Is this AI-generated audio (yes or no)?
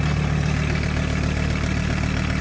no